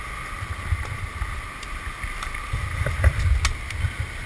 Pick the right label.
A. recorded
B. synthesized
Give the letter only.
A